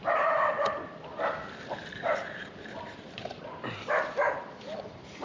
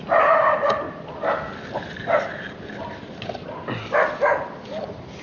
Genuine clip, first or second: second